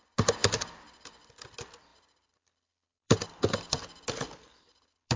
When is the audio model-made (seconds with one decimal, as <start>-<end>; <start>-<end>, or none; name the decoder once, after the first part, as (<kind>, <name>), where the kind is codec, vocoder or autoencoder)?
0.4-1.4 (vocoder, BigVGAN v2); 1.9-5.2